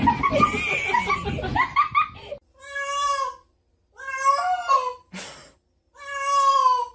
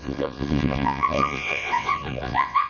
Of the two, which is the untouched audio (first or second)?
first